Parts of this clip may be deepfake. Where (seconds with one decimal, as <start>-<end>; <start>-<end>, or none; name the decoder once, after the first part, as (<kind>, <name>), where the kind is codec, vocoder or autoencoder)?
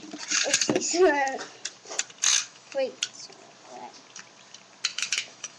2.3-3.0 (autoencoder, DAC-VAE); 4.9-5.6